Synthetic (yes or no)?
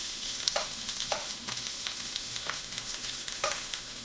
yes